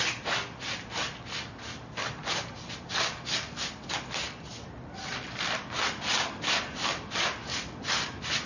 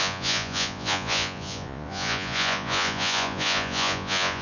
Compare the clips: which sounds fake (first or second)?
second